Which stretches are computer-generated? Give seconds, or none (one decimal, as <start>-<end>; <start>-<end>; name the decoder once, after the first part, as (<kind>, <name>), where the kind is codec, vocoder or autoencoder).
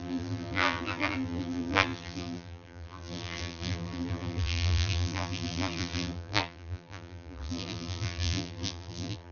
0.0-9.3 (vocoder, BigVGAN v2)